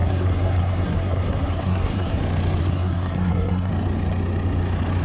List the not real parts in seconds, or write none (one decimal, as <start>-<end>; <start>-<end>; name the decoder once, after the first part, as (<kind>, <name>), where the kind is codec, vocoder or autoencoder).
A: 0.0-2.2 (codec, SNAC); 2.6-3.7